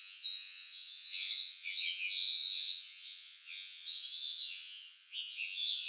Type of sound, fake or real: fake